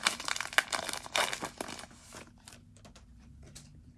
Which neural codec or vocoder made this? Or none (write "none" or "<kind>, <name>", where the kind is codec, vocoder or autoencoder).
none